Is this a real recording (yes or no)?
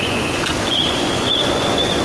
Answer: no